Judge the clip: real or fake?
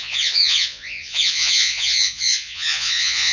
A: fake